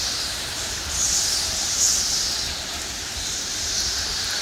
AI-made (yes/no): yes